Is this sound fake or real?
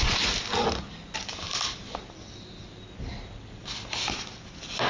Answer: real